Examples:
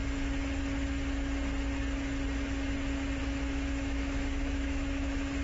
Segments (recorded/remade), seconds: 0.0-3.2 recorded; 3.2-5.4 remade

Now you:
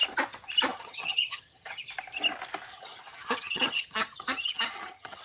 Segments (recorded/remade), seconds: 0.0-0.7 recorded; 0.7-1.8 remade; 1.8-2.7 recorded; 2.7-5.2 remade

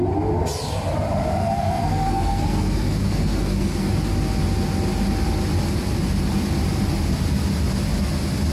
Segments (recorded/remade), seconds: 0.0-1.4 recorded; 1.4-3.9 remade; 3.9-8.5 recorded

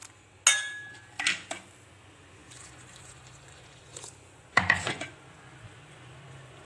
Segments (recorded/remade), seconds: 0.0-2.0 recorded; 2.0-6.6 remade

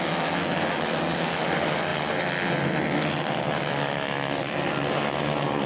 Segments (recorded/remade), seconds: 0.0-5.7 recorded